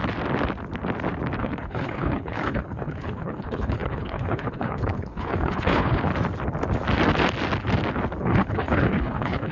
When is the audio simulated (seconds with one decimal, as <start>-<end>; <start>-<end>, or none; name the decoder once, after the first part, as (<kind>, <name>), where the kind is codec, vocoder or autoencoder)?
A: 1.4-6.1 (codec, HILCodec); 8.2-9.5